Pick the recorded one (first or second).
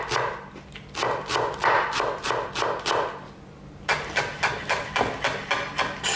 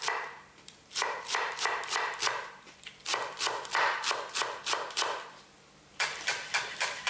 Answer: first